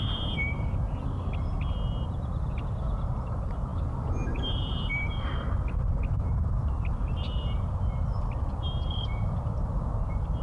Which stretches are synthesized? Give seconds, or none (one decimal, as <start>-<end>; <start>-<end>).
none